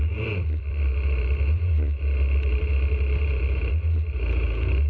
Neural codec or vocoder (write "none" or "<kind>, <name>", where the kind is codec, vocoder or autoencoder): vocoder, BigVGAN v2